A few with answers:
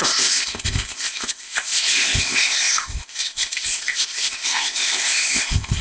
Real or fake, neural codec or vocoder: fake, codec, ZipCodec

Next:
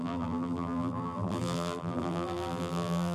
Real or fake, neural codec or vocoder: fake, vocoder, BigVGAN v2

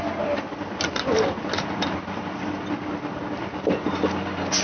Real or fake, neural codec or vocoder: real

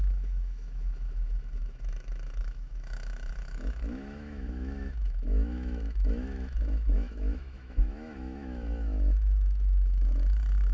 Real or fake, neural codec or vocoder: fake, autoencoder, DAC-VAE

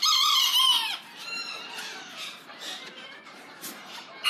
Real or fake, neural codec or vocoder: fake, vocoder, BigVGAN v2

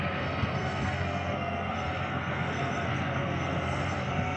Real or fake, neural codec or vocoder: fake, codec, SNAC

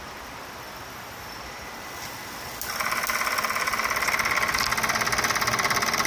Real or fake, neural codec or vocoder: real